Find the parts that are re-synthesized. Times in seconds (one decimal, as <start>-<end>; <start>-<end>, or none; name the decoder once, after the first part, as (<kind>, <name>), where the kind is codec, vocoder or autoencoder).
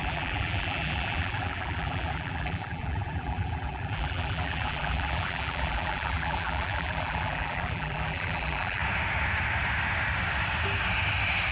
0.0-8.8 (vocoder, BigVGAN v2)